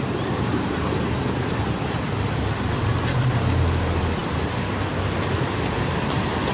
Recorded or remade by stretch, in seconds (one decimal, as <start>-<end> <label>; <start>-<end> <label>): 0.0-6.5 remade